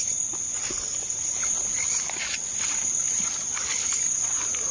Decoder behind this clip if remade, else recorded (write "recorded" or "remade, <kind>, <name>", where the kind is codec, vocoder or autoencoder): recorded